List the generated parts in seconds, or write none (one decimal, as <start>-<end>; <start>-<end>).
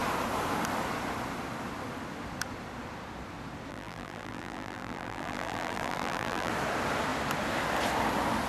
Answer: 3.7-6.5